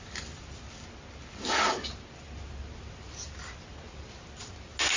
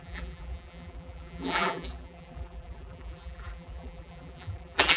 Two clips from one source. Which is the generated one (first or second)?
second